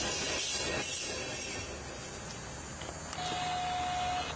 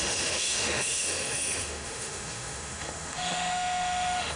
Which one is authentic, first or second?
first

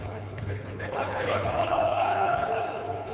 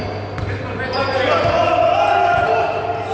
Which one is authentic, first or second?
second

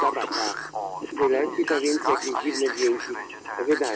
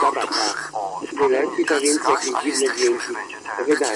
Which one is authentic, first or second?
first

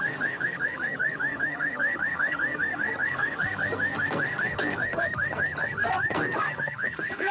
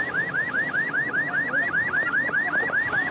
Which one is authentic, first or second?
second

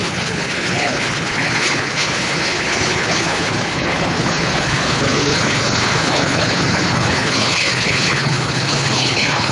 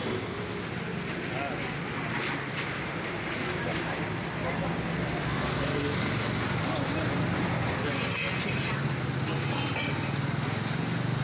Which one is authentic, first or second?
second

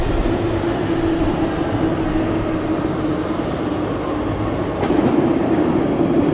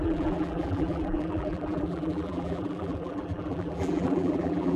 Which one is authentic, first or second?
first